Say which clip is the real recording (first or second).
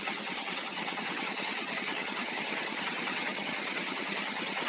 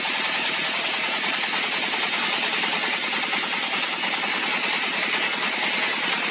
second